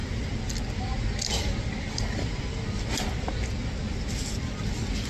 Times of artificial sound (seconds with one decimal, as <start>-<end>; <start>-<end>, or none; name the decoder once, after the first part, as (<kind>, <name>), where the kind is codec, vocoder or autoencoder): none